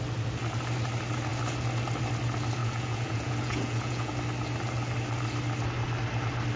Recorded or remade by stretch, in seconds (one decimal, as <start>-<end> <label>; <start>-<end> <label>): 0.0-2.6 recorded; 2.6-4.1 remade; 4.1-6.6 recorded

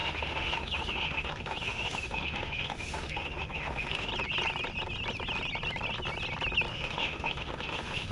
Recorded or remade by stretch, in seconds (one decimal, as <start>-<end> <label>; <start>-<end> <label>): 0.0-4.1 remade; 4.1-6.7 recorded; 6.7-8.1 remade

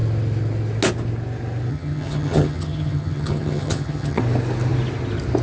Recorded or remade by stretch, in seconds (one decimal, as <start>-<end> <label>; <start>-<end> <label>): 0.0-1.7 recorded; 1.7-4.2 remade; 4.2-5.4 recorded